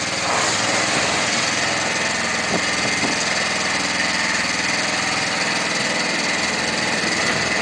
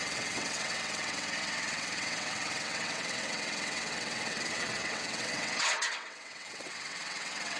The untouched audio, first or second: first